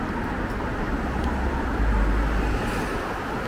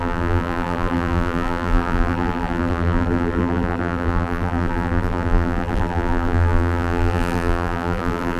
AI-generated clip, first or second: second